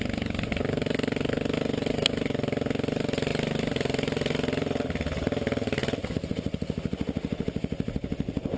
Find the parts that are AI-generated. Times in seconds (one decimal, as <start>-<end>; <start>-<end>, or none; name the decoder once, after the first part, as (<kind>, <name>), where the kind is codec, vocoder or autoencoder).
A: none